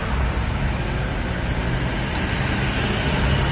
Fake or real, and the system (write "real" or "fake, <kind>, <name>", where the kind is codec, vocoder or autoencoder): real